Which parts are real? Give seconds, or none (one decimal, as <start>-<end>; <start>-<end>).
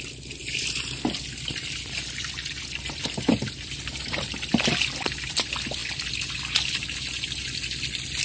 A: 0.0-8.2